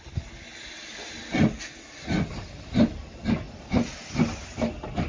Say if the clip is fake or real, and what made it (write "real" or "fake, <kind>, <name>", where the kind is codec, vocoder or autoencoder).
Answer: real